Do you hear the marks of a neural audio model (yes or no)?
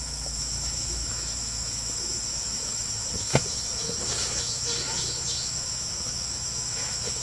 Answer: yes